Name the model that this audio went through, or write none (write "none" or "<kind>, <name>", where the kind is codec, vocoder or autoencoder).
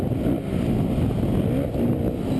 none